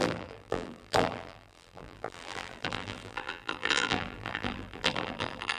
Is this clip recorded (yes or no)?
no